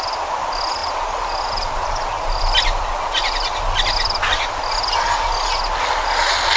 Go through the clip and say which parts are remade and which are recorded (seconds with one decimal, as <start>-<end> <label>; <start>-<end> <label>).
0.0-6.6 recorded